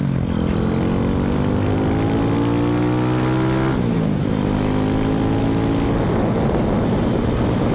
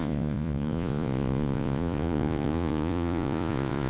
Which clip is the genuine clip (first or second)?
first